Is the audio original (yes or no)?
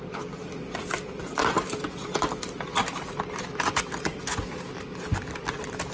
yes